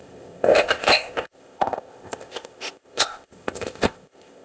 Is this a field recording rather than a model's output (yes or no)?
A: no